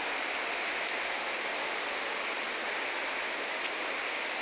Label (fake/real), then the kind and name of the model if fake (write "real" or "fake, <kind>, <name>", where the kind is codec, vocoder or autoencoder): real